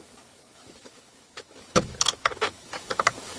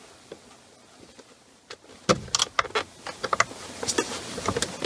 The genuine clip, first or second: second